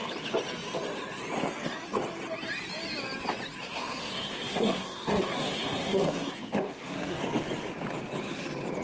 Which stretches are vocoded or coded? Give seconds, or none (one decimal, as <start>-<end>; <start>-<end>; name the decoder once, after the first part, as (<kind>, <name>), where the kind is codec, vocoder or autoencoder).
3.6-7.2 (codec, SNAC)